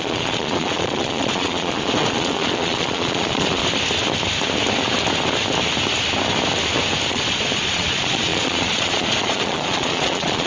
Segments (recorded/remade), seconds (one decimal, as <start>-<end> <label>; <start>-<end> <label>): 0.0-3.6 remade; 3.6-7.1 recorded; 7.1-10.5 remade